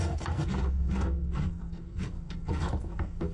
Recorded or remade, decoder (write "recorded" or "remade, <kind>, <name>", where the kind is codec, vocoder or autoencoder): remade, codec, SNAC